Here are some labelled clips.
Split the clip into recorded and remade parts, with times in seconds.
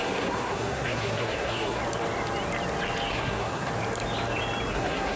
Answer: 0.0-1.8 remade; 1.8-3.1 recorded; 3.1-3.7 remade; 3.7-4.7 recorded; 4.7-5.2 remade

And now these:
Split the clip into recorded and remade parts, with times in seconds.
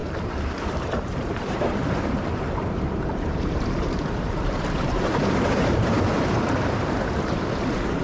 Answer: 0.0-8.0 remade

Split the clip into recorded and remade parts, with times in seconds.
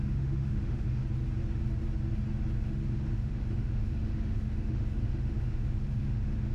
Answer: 0.0-1.0 remade; 1.0-2.6 recorded; 2.6-6.5 remade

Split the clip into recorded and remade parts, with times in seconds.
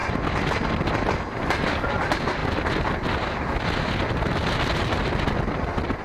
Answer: 0.0-6.0 recorded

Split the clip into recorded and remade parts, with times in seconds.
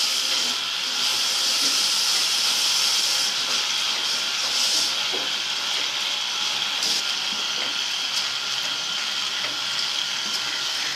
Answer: 0.0-1.1 recorded; 1.1-2.6 remade; 2.6-11.0 recorded